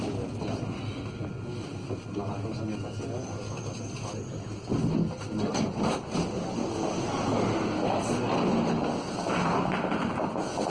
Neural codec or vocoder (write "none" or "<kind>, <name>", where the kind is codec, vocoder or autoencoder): none